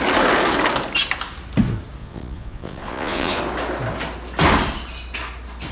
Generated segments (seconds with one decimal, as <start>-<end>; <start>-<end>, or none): 2.0-3.4